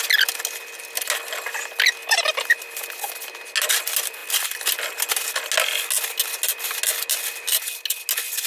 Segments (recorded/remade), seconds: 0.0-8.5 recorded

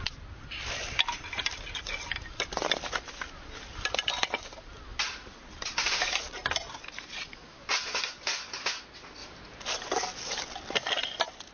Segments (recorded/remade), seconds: 0.0-4.9 recorded; 4.9-6.8 remade; 6.8-9.2 recorded; 9.2-9.7 remade; 9.7-11.5 recorded

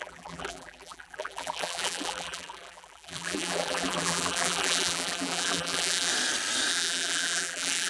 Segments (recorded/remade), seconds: 0.0-6.1 remade; 6.1-6.7 recorded; 6.7-7.9 remade

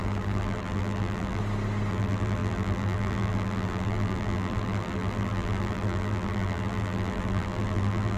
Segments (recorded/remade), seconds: 0.0-1.4 remade; 1.4-1.9 recorded; 1.9-8.2 remade

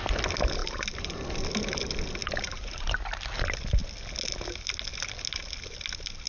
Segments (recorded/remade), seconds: 0.0-0.6 recorded; 0.6-1.2 remade; 1.2-2.2 recorded; 2.2-3.4 remade; 3.4-6.3 recorded

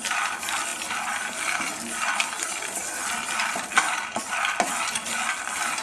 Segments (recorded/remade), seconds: 0.0-5.8 recorded

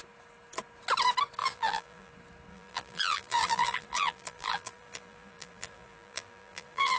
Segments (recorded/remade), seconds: 0.0-1.4 recorded; 1.4-2.1 remade; 2.1-2.5 recorded; 2.5-7.0 remade

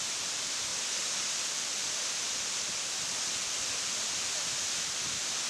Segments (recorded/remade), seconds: 0.0-0.7 recorded; 0.7-4.0 remade; 4.0-5.5 recorded